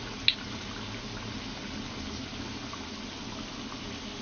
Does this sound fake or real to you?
real